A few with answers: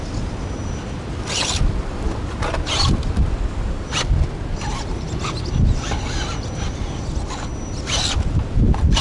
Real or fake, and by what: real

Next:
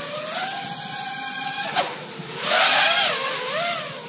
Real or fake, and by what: real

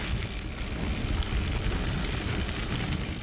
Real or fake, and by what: real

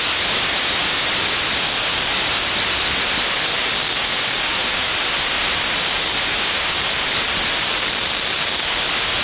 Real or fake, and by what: real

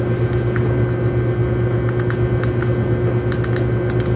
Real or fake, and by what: real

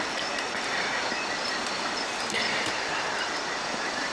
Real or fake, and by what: real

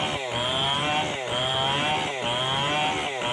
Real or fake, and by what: real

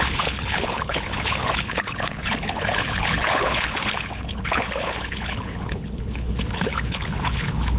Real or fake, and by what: fake, codec, HILCodec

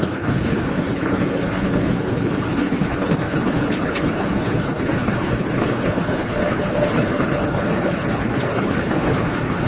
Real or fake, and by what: fake, codec, HILCodec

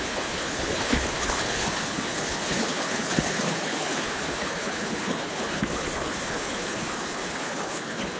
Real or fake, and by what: fake, codec, HILCodec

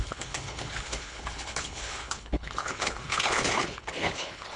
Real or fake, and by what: fake, codec, HILCodec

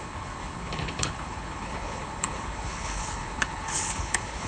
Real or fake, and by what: fake, codec, HILCodec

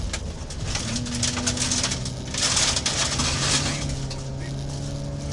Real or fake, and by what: real